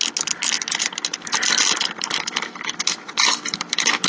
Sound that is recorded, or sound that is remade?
recorded